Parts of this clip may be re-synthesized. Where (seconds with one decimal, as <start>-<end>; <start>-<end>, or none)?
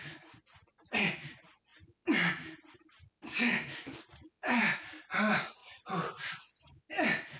1.7-4.6; 5.6-6.8